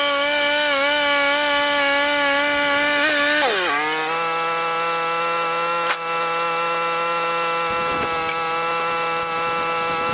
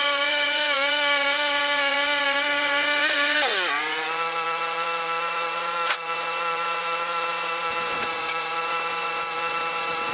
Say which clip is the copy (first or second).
second